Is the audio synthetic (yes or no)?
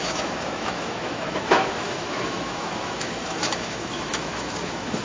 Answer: yes